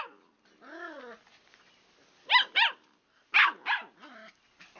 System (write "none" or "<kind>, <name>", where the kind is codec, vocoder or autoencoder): none